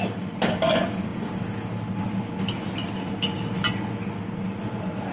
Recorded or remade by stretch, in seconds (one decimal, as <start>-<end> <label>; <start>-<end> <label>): 0.0-5.1 recorded